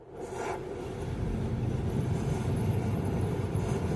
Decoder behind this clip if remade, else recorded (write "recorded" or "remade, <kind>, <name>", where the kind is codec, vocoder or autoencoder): recorded